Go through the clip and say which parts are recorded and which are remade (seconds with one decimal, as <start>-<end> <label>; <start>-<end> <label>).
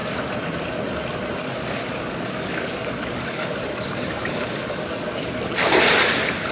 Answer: 0.0-1.4 recorded; 1.4-5.3 remade; 5.3-6.5 recorded